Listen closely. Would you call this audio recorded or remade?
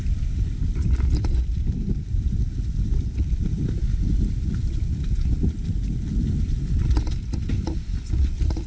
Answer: recorded